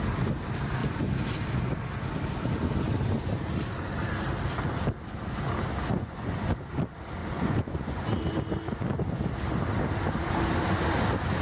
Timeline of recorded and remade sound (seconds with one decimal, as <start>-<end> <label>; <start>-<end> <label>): 0.0-5.9 recorded; 5.9-6.5 remade; 6.5-7.2 recorded; 7.2-8.2 remade; 8.2-11.4 recorded